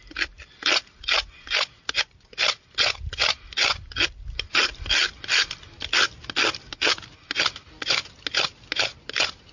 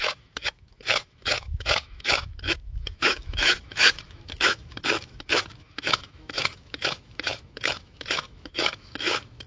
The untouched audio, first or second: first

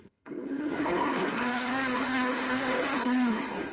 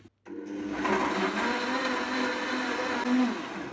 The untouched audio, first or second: second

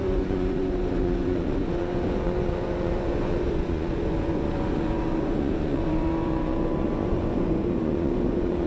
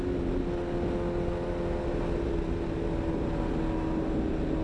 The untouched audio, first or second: second